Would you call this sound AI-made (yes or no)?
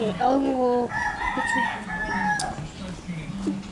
no